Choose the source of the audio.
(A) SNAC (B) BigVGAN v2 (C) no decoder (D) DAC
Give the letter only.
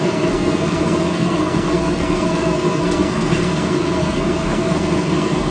A